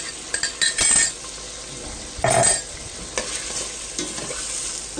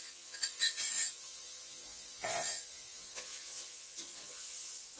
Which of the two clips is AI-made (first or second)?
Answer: second